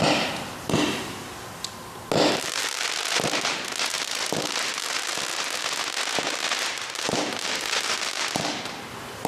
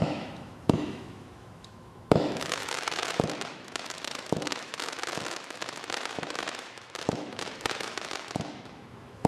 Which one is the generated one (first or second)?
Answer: second